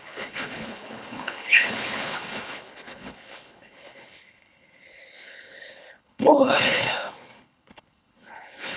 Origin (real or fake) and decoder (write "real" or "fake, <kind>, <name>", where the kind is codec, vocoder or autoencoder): fake, codec, HILCodec